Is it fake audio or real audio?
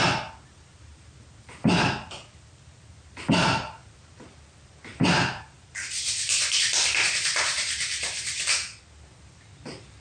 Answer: real